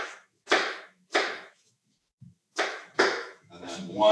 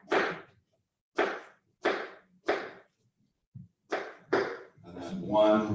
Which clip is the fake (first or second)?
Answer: first